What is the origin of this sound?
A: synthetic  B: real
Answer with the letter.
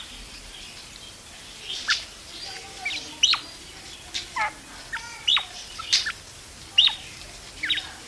B